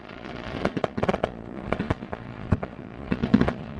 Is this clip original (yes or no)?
no